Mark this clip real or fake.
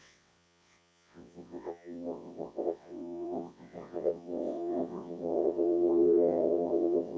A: fake